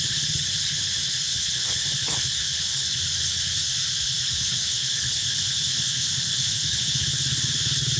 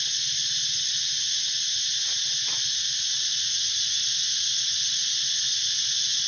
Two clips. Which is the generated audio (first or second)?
first